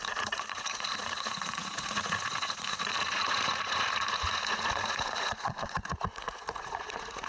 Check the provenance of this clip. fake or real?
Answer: fake